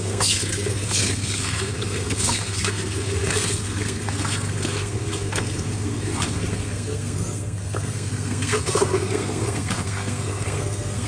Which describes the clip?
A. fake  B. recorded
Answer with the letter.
A